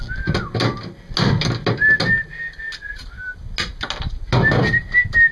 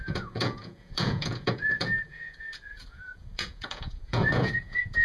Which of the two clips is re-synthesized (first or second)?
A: second